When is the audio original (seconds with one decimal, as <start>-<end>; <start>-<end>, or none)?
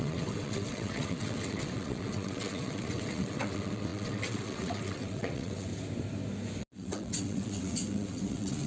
5.7-6.6